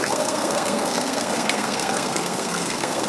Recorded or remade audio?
remade